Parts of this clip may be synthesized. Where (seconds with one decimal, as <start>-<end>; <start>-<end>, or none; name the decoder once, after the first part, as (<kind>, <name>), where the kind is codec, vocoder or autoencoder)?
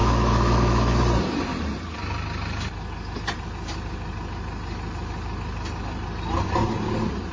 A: 0.0-1.0 (autoencoder, DAC-VAE)